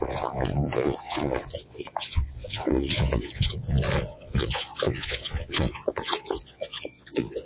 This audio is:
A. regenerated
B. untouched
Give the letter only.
A